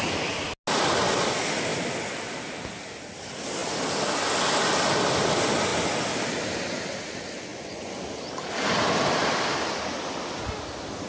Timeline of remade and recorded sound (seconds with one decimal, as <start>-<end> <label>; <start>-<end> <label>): 0.0-7.5 recorded; 7.5-8.0 remade; 8.0-11.1 recorded